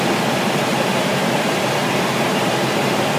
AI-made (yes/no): yes